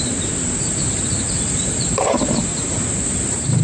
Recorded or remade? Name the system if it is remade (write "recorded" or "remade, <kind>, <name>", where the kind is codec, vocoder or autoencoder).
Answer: remade, vocoder, BigVGAN v2